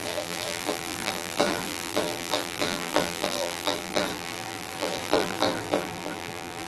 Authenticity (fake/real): fake